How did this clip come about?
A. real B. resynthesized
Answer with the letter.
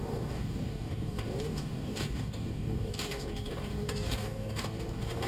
B